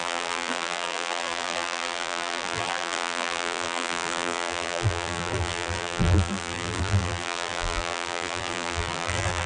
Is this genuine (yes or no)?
no